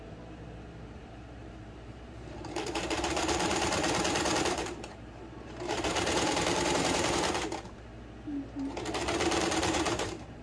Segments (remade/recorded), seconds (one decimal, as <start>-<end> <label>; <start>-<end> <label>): 0.0-3.8 remade; 3.8-4.4 recorded; 4.4-7.9 remade; 7.9-9.4 recorded; 9.4-10.4 remade